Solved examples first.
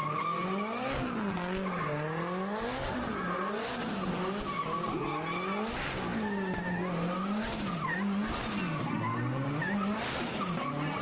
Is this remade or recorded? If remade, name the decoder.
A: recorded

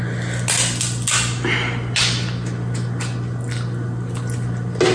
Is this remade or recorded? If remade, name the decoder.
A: recorded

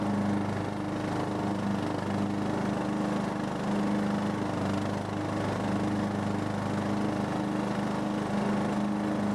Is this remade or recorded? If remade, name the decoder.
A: recorded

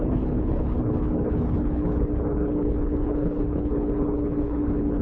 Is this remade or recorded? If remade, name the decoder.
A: remade, codec, HILCodec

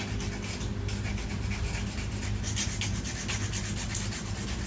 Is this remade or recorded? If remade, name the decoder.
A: recorded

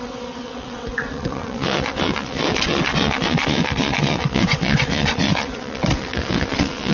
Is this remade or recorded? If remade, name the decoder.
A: remade, vocoder, WaveNeXt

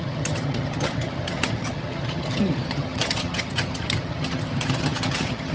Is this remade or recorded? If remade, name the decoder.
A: remade, vocoder, HiFi-GAN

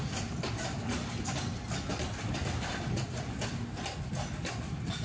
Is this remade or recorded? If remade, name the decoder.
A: recorded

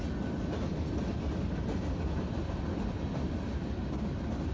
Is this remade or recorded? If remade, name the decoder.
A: recorded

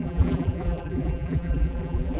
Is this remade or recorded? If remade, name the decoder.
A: remade, vocoder, BigVGAN v2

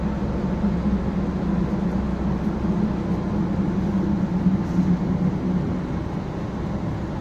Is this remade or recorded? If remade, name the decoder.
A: recorded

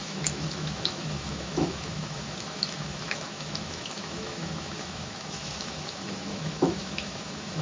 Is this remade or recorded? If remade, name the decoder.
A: remade, autoencoder, DAC-VAE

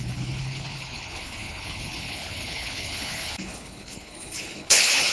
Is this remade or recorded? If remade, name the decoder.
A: remade, codec, HILCodec